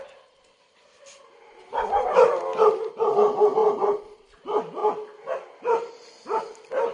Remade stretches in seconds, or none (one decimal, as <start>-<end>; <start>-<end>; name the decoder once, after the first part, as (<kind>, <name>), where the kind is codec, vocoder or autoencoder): none